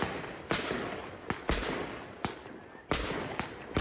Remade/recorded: recorded